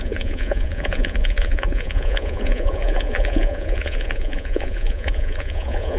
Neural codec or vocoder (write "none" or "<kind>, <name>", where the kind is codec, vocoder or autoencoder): vocoder, Vocos